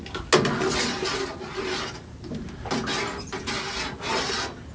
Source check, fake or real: real